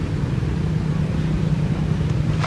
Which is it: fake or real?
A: real